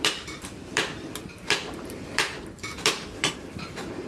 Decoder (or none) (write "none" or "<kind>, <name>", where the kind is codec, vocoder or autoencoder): vocoder, BigVGAN v2